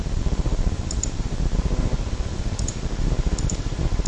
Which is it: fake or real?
fake